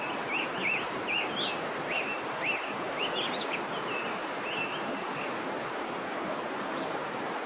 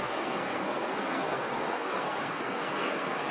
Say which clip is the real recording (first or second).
first